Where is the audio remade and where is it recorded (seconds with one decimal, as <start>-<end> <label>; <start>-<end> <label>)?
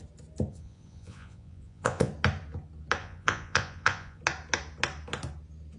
0.0-0.5 recorded; 0.5-2.1 remade; 2.1-3.0 recorded; 3.0-4.2 remade; 4.2-5.8 recorded